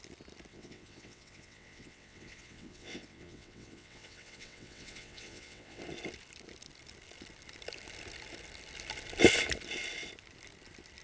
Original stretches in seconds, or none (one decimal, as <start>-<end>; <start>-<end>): 0.0-0.5; 5.8-11.0